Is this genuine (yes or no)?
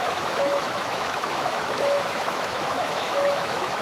no